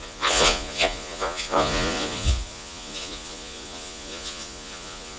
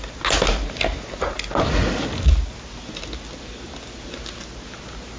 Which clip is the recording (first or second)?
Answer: second